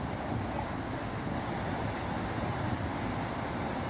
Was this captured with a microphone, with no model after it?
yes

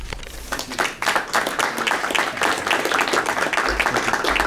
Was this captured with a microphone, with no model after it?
yes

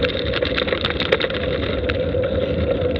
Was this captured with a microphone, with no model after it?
yes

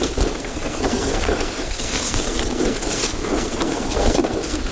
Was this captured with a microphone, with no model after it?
no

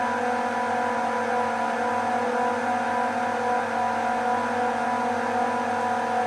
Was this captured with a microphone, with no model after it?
yes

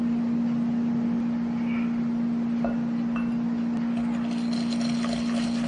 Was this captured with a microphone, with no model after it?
yes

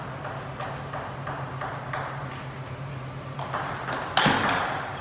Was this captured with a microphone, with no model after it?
yes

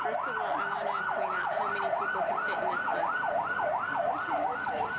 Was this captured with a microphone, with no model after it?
yes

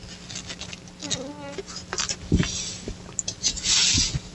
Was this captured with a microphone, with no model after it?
yes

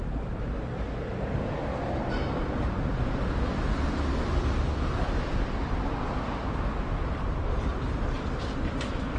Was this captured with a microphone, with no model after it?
yes